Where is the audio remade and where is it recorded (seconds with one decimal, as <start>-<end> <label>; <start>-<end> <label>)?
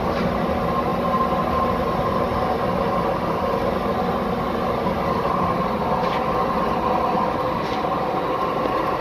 0.0-9.0 recorded